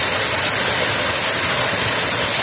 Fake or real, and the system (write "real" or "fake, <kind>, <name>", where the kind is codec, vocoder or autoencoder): real